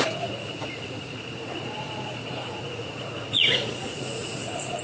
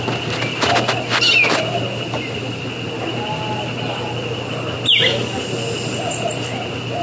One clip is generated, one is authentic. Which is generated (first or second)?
first